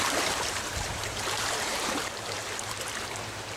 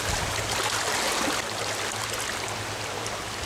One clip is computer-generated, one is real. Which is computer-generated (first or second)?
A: first